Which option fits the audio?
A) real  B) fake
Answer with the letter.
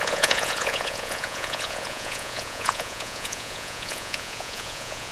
B